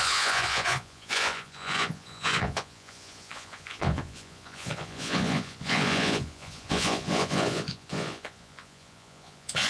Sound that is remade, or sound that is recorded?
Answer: remade